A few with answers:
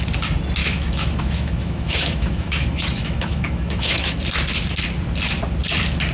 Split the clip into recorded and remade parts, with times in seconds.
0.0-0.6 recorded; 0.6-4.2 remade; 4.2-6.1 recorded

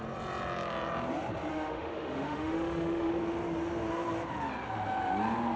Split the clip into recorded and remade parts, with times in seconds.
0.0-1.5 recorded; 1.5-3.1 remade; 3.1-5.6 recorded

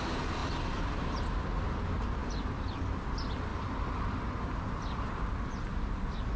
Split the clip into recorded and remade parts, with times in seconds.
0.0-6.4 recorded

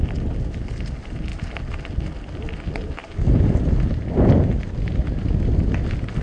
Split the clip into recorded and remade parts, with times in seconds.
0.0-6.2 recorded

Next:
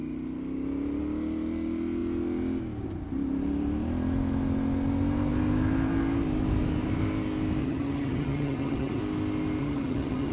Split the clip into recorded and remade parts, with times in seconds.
0.0-7.6 recorded; 7.6-9.0 remade; 9.0-9.6 recorded; 9.6-10.3 remade

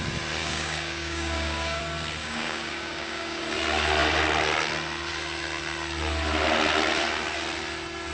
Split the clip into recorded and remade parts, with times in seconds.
0.0-0.4 recorded; 0.4-1.8 remade; 1.8-2.2 recorded; 2.2-3.4 remade; 3.4-8.1 recorded

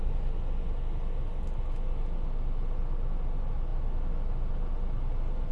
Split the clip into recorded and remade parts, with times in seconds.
0.0-5.5 recorded